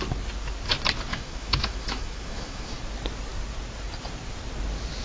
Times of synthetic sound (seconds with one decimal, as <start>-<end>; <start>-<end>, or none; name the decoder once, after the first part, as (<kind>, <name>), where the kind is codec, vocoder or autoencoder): 1.1-2.7 (autoencoder, DAC-VAE)